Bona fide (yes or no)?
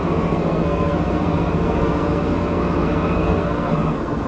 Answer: no